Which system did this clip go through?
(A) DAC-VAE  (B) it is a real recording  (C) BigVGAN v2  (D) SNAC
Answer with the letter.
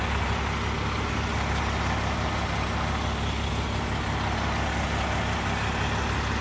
B